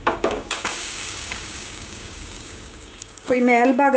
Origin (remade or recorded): remade